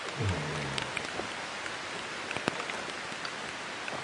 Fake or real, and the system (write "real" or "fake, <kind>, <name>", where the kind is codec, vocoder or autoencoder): real